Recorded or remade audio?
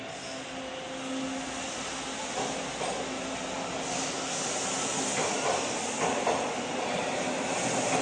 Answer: recorded